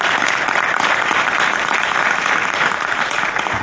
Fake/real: real